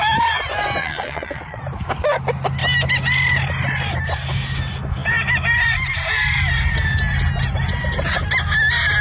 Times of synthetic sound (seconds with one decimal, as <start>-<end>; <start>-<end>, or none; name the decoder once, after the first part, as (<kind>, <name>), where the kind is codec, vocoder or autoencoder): 0.8-1.6 (vocoder, WaveNeXt)